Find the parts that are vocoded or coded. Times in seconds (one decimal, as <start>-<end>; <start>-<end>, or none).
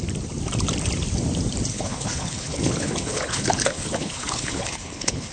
1.7-5.3